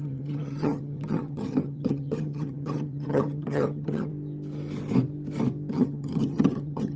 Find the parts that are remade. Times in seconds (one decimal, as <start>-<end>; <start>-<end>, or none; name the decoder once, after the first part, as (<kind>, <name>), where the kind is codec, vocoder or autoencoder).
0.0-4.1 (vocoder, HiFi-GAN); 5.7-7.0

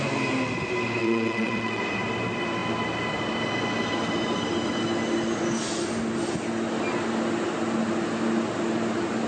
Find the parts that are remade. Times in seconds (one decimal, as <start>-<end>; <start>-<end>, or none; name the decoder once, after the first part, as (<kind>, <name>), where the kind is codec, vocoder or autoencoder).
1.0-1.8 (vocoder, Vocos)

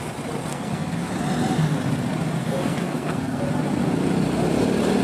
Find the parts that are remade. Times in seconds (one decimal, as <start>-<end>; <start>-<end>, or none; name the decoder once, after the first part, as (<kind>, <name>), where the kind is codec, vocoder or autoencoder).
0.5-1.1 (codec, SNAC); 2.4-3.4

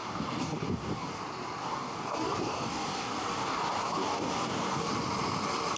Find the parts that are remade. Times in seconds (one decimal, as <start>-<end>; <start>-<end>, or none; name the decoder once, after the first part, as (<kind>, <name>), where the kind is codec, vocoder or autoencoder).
0.0-1.2 (codec, DAC); 1.6-4.9